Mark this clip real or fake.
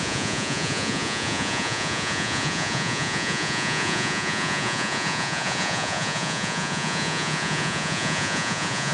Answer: fake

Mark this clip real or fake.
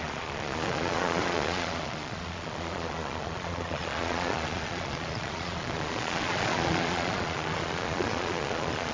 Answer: fake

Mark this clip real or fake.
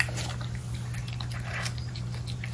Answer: real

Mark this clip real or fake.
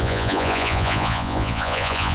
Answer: fake